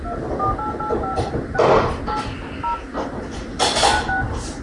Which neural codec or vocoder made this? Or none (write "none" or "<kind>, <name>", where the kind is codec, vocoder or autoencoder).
none